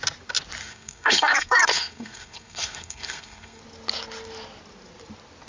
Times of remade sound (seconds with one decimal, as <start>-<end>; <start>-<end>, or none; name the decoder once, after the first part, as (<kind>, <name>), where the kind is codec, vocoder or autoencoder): 0.6-3.6 (codec, SNAC)